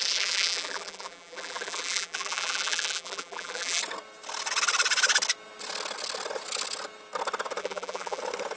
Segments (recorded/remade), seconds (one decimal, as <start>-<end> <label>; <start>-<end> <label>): 0.0-3.8 remade; 3.8-7.6 recorded; 7.6-8.2 remade; 8.2-8.6 recorded